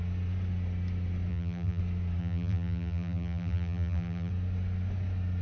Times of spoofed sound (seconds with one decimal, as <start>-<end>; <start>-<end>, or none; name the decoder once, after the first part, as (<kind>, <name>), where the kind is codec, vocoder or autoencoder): 1.3-1.8 (vocoder, BigVGAN v2); 2.2-4.3